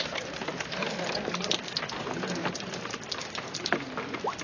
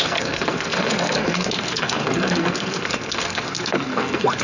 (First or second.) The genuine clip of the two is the first